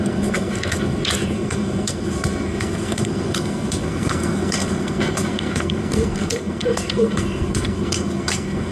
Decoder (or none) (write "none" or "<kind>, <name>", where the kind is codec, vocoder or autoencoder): codec, SNAC